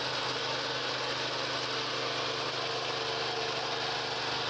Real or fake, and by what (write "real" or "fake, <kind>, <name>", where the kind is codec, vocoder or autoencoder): real